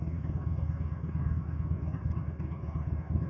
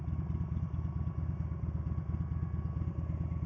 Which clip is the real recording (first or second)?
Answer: second